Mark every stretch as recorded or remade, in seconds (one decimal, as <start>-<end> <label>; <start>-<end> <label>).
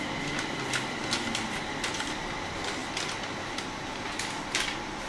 0.0-5.1 recorded